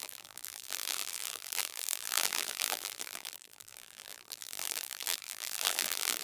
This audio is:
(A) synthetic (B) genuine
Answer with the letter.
A